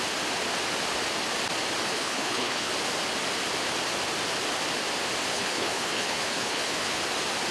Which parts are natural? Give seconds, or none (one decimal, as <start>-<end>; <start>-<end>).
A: 0.0-1.9; 2.7-5.3; 7.0-7.5